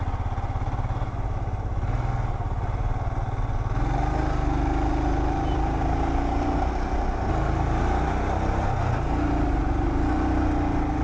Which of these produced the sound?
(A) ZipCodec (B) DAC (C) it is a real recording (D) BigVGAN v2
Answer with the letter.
C